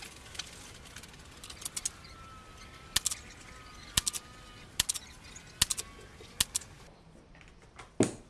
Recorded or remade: recorded